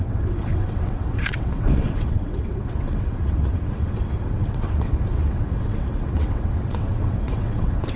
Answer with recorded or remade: remade